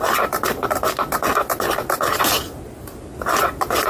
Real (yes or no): yes